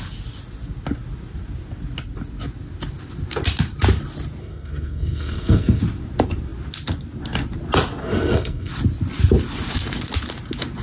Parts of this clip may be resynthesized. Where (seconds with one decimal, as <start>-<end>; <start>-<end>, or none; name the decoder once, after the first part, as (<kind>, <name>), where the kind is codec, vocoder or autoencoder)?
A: 4.4-5.8 (codec, SNAC); 8.0-8.7